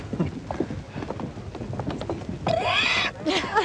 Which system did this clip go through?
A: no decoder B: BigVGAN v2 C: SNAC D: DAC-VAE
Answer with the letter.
A